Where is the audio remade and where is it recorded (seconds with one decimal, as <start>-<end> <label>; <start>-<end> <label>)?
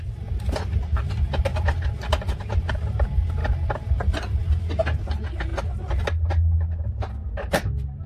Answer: 0.0-8.1 recorded